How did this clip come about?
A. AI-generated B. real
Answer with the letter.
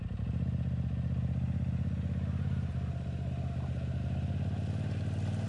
B